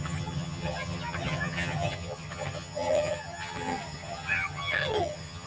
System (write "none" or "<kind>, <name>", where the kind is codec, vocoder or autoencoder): vocoder, HiFi-GAN